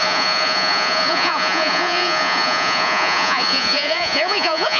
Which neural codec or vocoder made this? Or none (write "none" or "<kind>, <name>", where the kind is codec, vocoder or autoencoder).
vocoder, Vocos